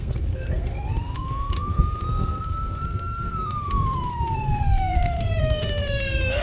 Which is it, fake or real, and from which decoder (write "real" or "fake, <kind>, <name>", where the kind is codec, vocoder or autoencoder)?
fake, codec, SNAC